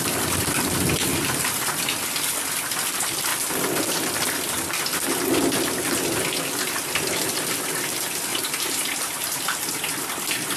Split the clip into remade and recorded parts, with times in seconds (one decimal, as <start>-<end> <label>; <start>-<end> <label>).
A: 0.0-1.1 recorded; 1.1-1.6 remade; 1.6-8.3 recorded; 8.3-9.4 remade; 9.4-10.6 recorded